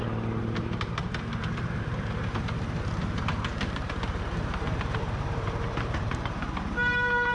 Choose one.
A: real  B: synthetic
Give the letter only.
B